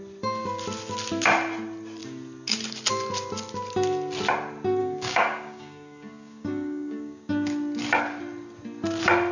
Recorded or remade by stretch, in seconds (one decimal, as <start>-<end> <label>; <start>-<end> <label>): 0.0-4.8 recorded; 4.8-7.3 remade; 7.3-9.3 recorded